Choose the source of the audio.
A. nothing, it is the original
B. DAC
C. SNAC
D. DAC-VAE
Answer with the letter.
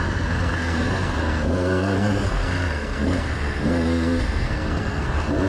C